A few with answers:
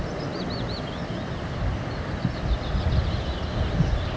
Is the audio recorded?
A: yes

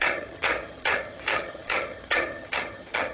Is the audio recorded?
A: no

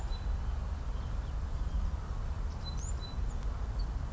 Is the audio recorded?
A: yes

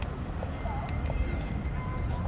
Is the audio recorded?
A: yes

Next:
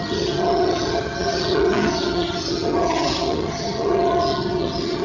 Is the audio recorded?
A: no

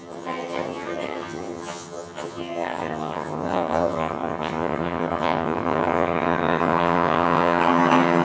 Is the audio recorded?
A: no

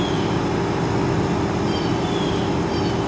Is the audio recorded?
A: yes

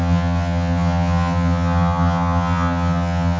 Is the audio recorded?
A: no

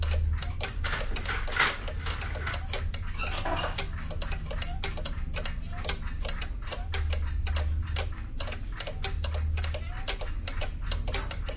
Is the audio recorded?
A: yes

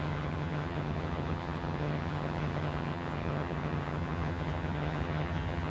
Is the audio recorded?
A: no